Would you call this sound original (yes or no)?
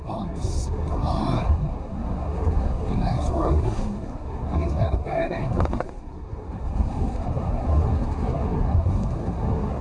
no